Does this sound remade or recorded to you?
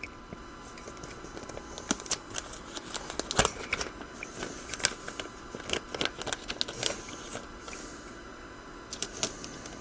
recorded